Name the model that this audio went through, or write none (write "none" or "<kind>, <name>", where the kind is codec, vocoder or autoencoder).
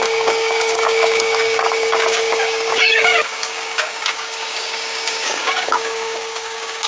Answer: codec, DAC